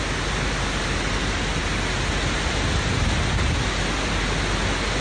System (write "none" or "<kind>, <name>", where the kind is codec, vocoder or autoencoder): none